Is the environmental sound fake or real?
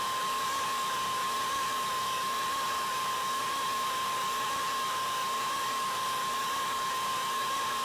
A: fake